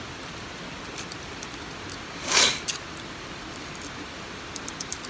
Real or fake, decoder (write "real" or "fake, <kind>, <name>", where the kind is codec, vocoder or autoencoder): fake, vocoder, BigVGAN v2